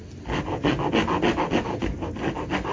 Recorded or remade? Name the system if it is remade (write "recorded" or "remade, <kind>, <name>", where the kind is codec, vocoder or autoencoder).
recorded